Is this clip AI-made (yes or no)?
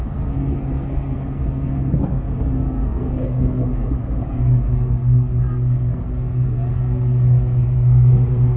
yes